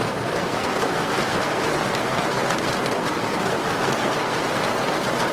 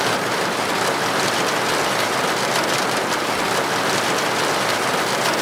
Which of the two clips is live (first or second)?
second